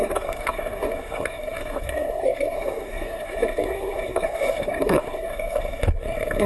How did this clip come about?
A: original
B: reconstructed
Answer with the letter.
B